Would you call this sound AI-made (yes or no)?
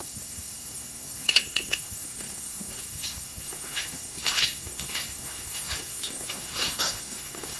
yes